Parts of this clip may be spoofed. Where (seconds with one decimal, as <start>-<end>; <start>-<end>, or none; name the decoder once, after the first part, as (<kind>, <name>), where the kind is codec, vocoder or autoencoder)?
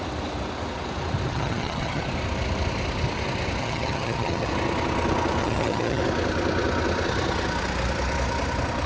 1.3-2.0 (vocoder, HiFi-GAN); 3.6-4.5; 5.4-6.0